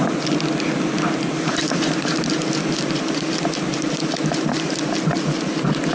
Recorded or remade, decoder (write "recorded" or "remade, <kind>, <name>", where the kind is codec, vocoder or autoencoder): recorded